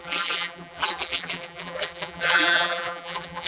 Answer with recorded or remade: remade